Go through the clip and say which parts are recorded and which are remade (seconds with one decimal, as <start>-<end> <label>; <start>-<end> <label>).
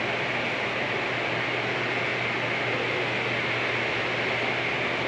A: 0.0-5.1 recorded